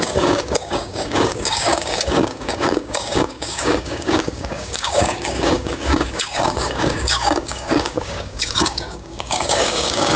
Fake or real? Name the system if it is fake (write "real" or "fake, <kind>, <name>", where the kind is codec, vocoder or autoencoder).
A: fake, codec, DAC